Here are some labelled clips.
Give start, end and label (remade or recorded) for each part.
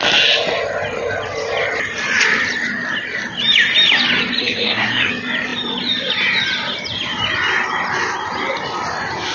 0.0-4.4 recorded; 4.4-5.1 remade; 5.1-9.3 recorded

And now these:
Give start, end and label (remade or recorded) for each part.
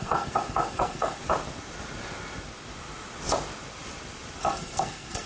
0.0-1.2 remade; 1.2-4.4 recorded; 4.4-5.3 remade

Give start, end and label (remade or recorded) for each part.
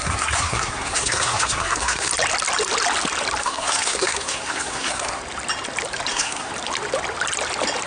0.0-2.1 remade; 2.1-3.4 recorded; 3.4-5.2 remade; 5.2-6.1 recorded; 6.1-6.5 remade; 6.5-7.9 recorded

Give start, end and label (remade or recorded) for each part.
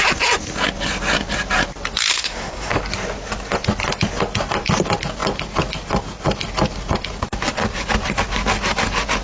0.0-2.1 recorded; 2.1-2.7 remade; 2.7-9.2 recorded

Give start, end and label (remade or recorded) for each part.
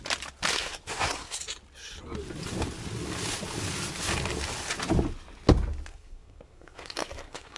0.0-0.5 recorded; 0.5-1.4 remade; 1.4-5.9 recorded; 5.9-7.6 remade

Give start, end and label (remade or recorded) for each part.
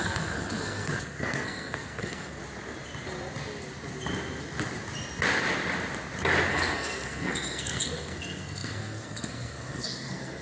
0.0-2.4 remade; 2.4-6.5 recorded; 6.5-10.4 remade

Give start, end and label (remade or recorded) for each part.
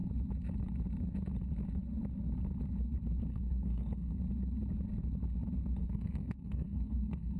0.0-3.3 recorded; 3.3-4.2 remade; 4.2-5.8 recorded; 5.8-7.4 remade